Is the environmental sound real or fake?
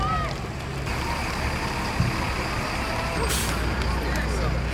real